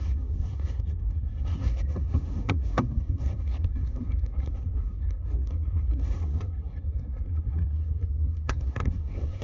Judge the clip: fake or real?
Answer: fake